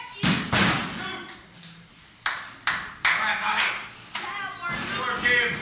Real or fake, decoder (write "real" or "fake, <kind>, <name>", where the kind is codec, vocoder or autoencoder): real